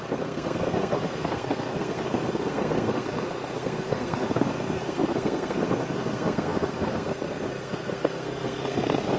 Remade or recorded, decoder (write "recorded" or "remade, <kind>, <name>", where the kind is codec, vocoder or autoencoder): remade, codec, SNAC